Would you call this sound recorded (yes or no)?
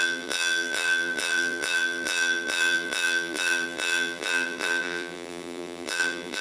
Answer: no